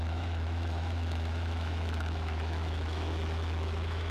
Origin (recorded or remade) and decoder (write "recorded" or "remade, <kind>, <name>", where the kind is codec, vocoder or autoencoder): remade, autoencoder, DAC-VAE